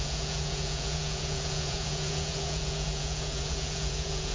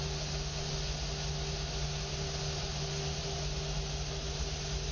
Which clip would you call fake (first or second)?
first